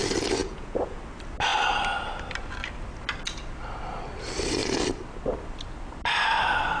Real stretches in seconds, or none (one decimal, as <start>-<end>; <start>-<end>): 0.0-0.4; 1.0-6.8